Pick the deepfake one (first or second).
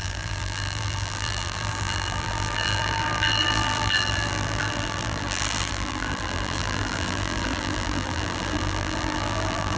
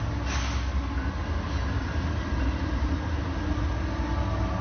first